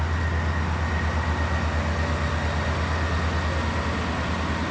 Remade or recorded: recorded